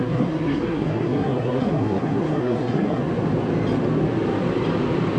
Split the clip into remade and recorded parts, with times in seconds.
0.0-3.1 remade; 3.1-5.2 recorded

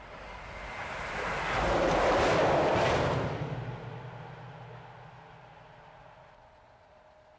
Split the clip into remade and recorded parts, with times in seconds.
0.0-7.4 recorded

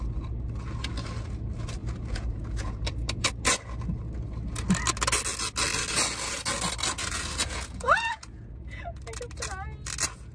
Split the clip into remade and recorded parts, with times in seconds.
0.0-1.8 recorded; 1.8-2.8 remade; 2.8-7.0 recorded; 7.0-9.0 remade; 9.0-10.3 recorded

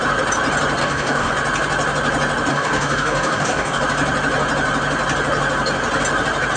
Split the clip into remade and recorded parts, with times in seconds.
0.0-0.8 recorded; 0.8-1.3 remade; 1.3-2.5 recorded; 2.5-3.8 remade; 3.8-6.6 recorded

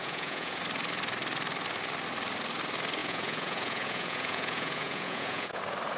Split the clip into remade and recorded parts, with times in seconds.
0.0-0.6 remade; 0.6-3.0 recorded; 3.0-5.6 remade; 5.6-6.0 recorded

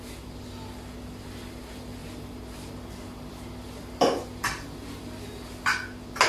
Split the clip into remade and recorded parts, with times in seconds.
0.0-2.0 recorded; 2.0-5.3 remade; 5.3-6.3 recorded